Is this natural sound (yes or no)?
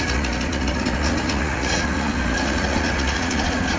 no